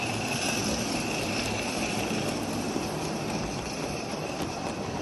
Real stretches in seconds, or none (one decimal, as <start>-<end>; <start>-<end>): none